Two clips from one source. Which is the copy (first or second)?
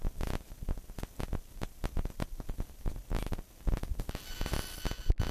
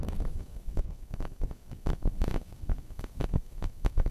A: second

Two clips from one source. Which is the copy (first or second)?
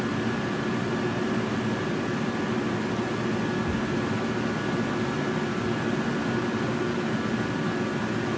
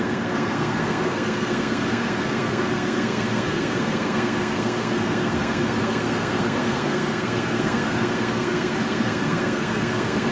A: second